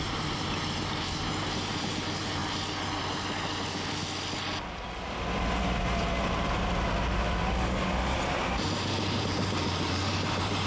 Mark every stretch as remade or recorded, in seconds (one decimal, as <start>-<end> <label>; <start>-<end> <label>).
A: 0.0-2.4 remade; 2.4-7.6 recorded; 7.6-10.7 remade